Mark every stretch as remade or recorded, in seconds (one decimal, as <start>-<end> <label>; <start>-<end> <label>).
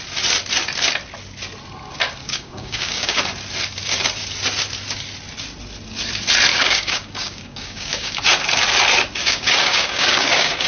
0.0-2.2 recorded; 2.2-3.2 remade; 3.2-6.5 recorded; 6.5-8.2 remade; 8.2-9.2 recorded; 9.2-10.7 remade